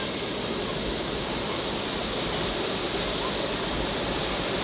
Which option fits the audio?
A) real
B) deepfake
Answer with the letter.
A